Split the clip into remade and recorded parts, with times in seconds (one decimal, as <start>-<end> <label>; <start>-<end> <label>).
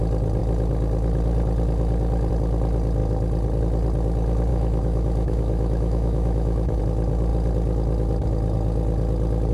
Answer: 0.0-4.5 recorded; 4.5-6.8 remade; 6.8-9.5 recorded